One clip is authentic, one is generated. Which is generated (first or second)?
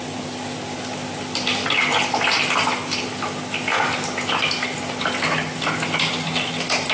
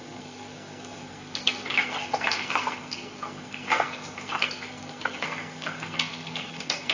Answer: second